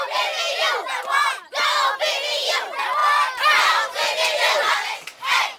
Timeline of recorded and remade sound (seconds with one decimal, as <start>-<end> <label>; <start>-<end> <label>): 0.0-5.6 recorded